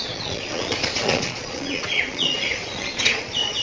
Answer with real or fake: fake